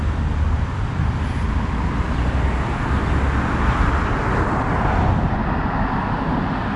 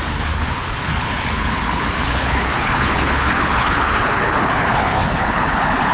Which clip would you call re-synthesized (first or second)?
second